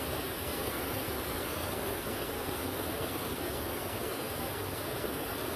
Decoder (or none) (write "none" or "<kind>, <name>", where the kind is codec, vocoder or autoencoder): codec, SNAC